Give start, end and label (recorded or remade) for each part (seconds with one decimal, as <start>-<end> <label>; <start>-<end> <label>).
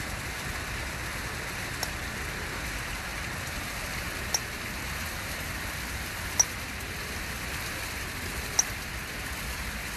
0.0-10.0 recorded